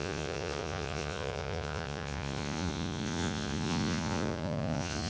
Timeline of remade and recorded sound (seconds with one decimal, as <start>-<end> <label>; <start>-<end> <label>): 0.0-5.1 remade